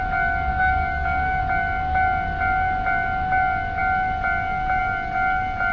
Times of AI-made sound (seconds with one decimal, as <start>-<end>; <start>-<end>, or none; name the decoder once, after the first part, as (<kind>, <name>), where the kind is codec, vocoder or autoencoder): 0.5-1.4 (codec, DAC)